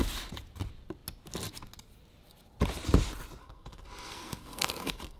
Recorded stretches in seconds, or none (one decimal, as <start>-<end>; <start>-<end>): 0.0-3.4